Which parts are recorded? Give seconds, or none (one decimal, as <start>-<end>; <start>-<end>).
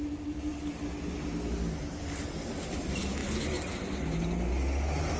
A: 0.0-5.2